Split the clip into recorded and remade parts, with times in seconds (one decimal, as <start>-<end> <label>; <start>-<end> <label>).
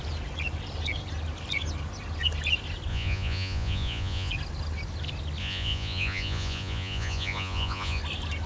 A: 0.0-2.9 recorded; 2.9-4.3 remade; 4.3-5.4 recorded; 5.4-8.0 remade; 8.0-8.5 recorded